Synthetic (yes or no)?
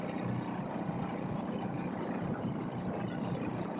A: no